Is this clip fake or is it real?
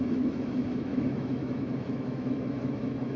fake